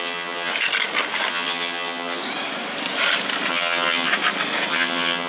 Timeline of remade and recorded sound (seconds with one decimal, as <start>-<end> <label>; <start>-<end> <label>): 0.0-0.5 remade; 0.5-1.3 recorded; 1.3-2.2 remade; 2.2-3.5 recorded; 3.5-4.1 remade; 4.1-4.7 recorded; 4.7-5.3 remade